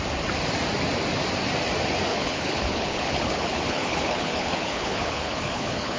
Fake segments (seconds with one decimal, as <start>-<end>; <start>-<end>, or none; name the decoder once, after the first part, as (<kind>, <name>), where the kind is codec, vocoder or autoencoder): 2.1-6.0 (codec, HILCodec)